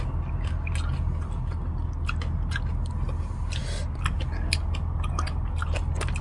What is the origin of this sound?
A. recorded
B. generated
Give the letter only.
A